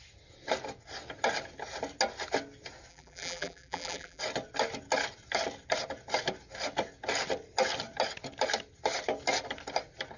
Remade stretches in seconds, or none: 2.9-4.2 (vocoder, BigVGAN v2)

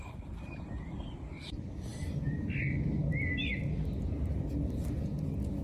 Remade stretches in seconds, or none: none

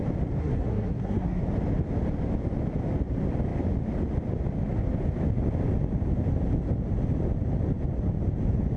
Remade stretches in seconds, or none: 0.4-1.4 (codec, SNAC)

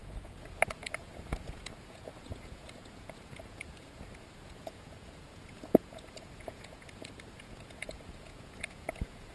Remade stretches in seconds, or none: 0.0-9.3 (vocoder, Vocos)

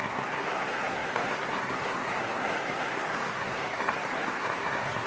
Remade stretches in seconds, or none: 0.0-5.1 (codec, SNAC)

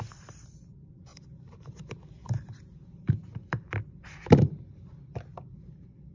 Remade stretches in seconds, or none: 1.1-4.8 (vocoder, BigVGAN v2); 5.3-6.1